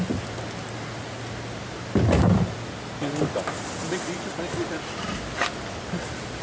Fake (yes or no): no